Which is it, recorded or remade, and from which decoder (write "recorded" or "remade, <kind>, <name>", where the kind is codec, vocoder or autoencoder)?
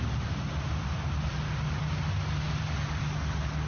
recorded